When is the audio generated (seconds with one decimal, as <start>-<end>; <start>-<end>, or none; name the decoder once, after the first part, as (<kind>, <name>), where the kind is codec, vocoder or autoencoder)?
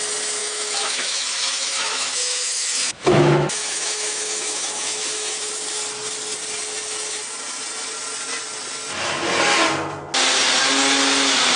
0.4-5.5 (autoencoder, DAC-VAE)